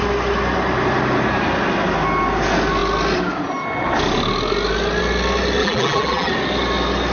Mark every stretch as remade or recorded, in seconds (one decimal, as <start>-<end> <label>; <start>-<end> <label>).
0.0-5.6 recorded; 5.6-6.3 remade; 6.3-7.1 recorded